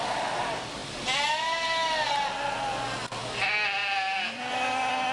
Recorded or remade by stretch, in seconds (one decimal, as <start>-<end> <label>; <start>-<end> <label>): 0.0-5.1 recorded